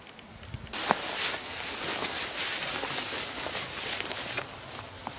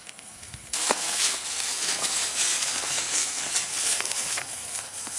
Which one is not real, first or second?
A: second